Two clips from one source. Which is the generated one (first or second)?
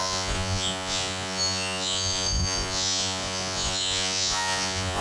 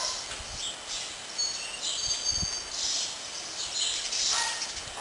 first